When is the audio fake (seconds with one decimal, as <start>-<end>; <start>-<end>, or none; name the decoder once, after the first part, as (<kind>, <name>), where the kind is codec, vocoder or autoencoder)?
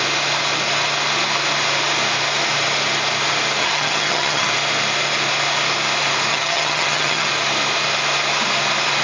3.6-4.5 (vocoder, HiFi-GAN); 6.3-7.3